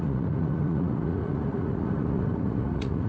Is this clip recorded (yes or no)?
no